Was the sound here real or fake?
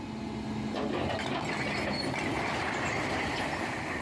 real